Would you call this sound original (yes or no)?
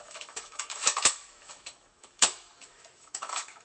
no